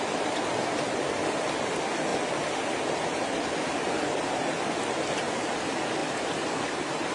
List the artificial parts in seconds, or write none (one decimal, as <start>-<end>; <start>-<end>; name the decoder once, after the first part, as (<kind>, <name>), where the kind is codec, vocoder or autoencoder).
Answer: 6.0-7.1 (vocoder, BigVGAN v2)